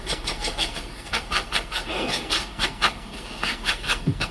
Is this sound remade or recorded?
remade